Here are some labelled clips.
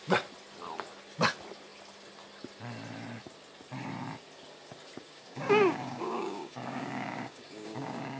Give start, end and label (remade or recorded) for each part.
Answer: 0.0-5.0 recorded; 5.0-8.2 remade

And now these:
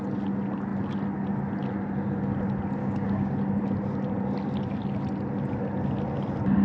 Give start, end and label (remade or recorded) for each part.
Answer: 0.0-2.8 recorded; 2.8-3.3 remade; 3.3-6.6 recorded

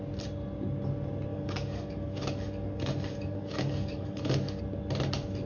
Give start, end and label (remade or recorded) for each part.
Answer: 0.0-1.3 recorded; 1.3-4.6 remade; 4.6-5.5 recorded

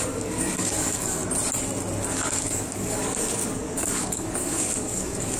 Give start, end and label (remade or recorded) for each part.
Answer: 0.0-1.2 remade; 1.2-2.1 recorded; 2.1-5.4 remade

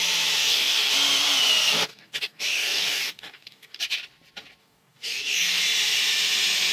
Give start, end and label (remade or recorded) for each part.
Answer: 0.0-0.4 recorded; 0.4-0.9 remade; 0.9-1.9 recorded; 1.9-3.8 remade; 3.8-4.6 recorded; 4.6-5.6 remade; 5.6-6.7 recorded

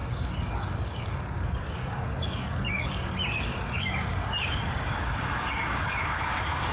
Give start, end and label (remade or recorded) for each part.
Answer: 0.0-6.7 remade